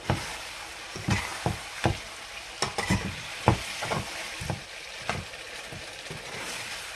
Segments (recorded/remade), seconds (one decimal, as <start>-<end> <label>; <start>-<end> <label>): 0.0-7.0 recorded